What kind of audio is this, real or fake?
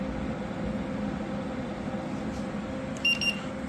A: real